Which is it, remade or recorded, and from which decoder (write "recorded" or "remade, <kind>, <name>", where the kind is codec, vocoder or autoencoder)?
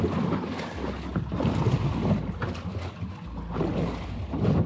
recorded